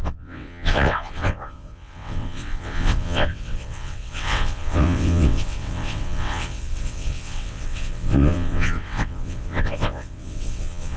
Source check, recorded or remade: remade